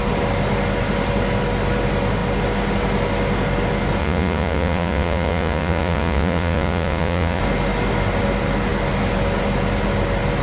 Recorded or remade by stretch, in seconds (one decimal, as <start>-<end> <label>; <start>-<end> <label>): 0.0-4.0 recorded; 4.0-7.4 remade; 7.4-10.4 recorded